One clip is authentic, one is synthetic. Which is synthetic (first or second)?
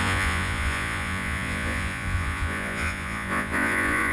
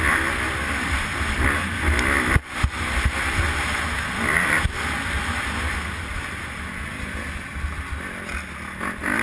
first